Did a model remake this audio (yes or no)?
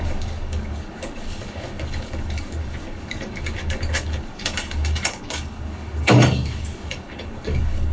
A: yes